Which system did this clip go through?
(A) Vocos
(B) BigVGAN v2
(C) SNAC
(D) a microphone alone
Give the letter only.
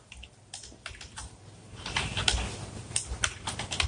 D